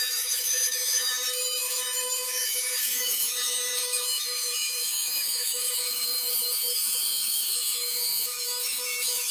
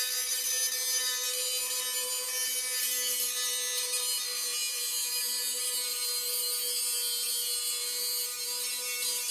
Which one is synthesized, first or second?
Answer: first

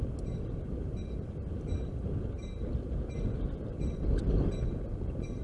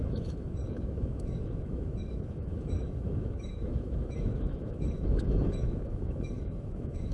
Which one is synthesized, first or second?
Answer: second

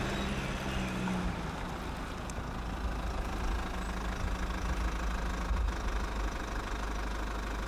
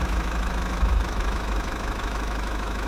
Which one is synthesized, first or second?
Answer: second